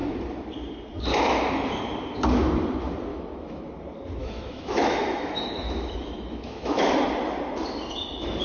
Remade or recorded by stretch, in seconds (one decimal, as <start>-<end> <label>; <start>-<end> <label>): 0.0-3.1 recorded; 3.1-3.6 remade; 3.6-4.2 recorded; 4.2-6.8 remade; 6.8-8.4 recorded